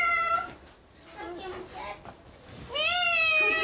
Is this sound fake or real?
real